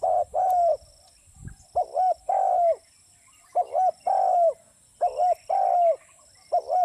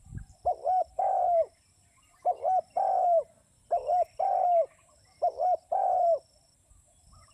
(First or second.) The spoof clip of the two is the second